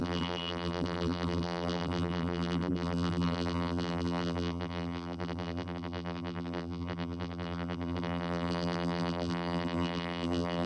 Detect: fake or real fake